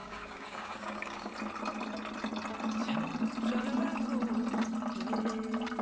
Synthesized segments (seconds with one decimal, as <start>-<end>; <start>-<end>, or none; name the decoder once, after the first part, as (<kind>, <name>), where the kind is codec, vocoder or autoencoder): 0.0-1.3 (codec, DAC)